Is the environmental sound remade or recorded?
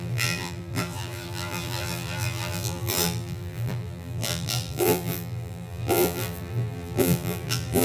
remade